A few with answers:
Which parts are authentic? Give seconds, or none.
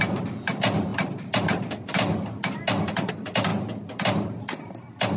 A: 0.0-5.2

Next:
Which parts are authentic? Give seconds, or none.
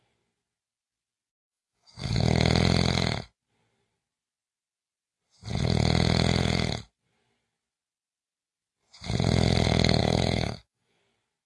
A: 0.0-1.3; 2.2-10.0; 11.0-11.5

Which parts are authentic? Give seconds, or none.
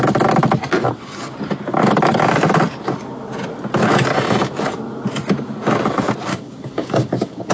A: 0.0-6.3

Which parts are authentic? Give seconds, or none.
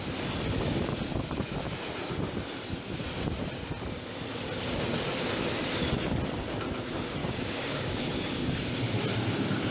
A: 0.0-7.2; 8.6-9.7